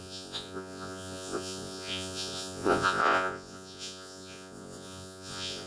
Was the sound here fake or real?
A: fake